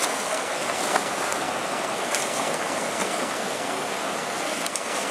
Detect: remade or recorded remade